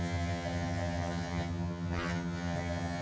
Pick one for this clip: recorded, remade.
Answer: remade